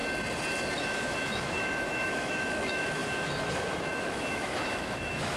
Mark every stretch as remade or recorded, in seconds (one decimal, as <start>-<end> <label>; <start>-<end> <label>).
0.0-1.0 recorded; 1.0-5.4 remade